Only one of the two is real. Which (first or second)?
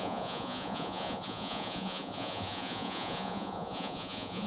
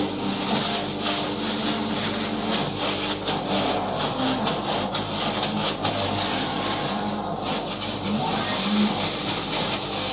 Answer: second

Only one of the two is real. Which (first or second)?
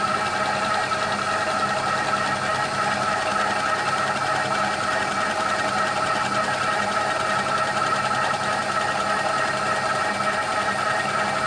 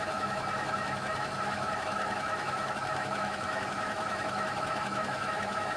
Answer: first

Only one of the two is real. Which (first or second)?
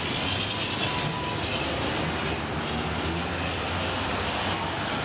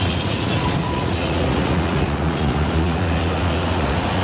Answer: first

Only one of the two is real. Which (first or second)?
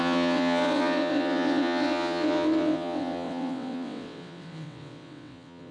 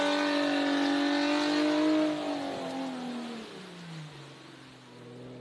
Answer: second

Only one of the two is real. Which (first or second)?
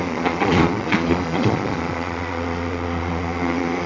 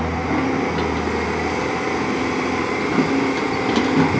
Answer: second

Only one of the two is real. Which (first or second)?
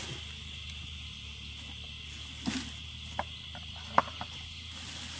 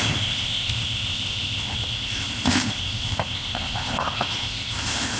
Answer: first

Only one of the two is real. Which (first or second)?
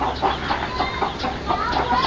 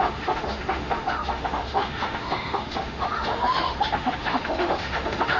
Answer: first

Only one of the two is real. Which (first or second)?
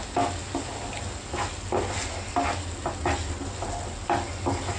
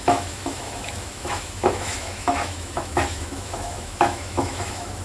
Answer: first